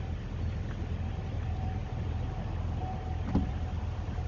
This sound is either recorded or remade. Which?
recorded